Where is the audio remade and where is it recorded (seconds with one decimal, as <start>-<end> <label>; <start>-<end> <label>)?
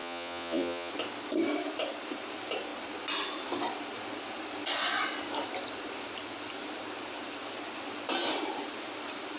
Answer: 0.0-0.9 remade; 0.9-9.4 recorded